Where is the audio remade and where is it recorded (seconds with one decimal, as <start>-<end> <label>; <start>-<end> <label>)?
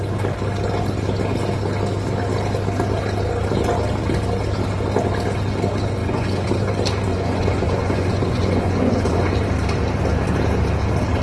0.0-6.0 recorded; 6.0-6.6 remade; 6.6-7.1 recorded; 7.1-9.3 remade; 9.3-11.2 recorded